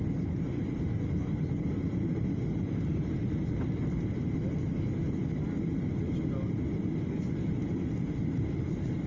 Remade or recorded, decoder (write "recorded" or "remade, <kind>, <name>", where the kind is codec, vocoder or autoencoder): recorded